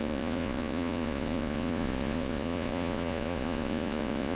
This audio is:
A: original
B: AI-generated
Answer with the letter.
B